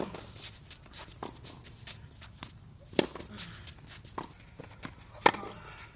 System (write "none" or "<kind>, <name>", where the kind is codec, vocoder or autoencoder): none